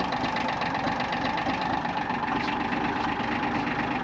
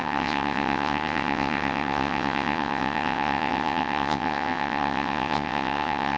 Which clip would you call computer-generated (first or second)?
second